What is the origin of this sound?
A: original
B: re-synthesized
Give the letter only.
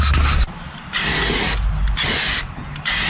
A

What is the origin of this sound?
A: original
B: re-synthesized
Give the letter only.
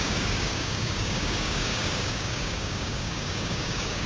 B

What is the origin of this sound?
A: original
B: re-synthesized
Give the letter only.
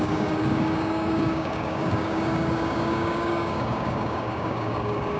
B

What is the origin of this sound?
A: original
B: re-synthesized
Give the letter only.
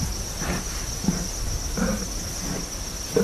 A